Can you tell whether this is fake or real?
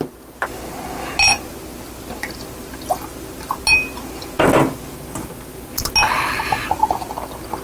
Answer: real